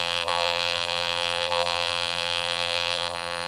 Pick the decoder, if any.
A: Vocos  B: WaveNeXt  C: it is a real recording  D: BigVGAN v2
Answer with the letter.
D